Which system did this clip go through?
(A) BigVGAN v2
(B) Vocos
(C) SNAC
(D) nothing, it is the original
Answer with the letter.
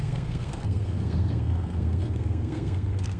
C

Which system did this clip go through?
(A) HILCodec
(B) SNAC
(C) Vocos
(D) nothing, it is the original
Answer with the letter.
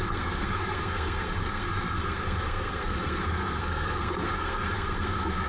B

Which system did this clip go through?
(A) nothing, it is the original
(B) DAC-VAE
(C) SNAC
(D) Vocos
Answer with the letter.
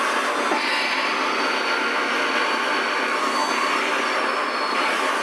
A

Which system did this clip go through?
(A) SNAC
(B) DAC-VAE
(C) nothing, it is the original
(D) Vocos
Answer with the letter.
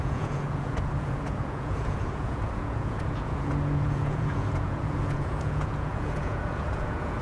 D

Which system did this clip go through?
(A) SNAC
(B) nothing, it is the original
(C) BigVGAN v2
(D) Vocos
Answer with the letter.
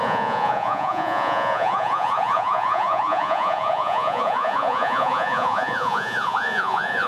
D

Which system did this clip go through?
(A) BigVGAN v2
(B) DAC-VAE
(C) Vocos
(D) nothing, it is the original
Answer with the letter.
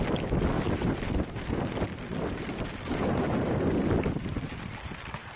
D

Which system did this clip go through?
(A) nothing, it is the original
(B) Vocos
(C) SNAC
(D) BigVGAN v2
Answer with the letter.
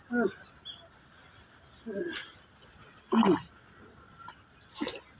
A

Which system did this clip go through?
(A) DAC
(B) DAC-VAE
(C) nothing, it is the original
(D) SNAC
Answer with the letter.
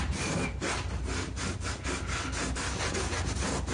C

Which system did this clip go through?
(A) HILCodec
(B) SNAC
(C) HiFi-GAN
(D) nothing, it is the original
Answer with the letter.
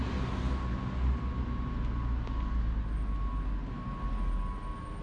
D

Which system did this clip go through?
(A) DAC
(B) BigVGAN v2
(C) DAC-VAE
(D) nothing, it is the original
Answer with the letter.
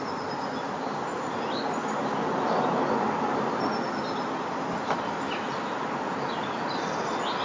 D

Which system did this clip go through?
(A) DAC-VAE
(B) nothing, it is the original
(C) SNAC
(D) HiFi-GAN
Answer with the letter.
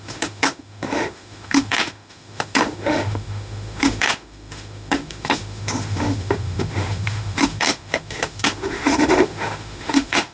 A